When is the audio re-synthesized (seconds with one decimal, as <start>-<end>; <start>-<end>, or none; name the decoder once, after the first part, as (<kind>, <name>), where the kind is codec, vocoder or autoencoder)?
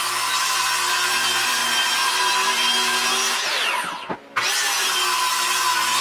none